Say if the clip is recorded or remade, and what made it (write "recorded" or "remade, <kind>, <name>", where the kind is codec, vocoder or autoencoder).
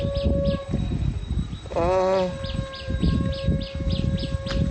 recorded